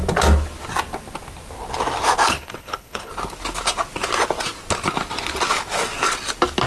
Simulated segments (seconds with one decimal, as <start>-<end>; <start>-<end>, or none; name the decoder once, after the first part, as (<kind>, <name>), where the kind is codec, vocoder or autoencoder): 2.3-3.1 (codec, HILCodec)